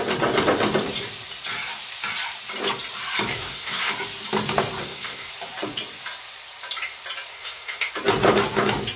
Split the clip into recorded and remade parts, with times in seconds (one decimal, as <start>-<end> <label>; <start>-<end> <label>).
0.0-3.3 recorded; 3.3-3.9 remade; 3.9-4.8 recorded; 4.8-5.3 remade; 5.3-7.3 recorded; 7.3-7.9 remade; 7.9-9.0 recorded